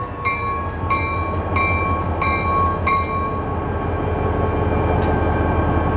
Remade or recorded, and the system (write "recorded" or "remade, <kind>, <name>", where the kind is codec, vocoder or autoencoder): recorded